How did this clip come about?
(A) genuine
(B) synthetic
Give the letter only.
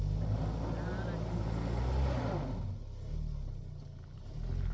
A